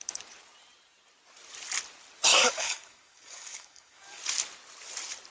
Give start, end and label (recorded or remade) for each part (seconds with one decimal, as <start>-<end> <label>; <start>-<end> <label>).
0.0-2.3 recorded; 2.3-4.2 remade; 4.2-5.3 recorded